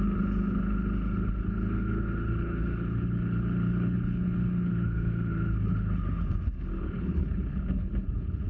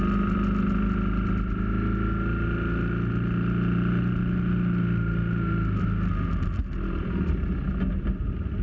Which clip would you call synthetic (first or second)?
first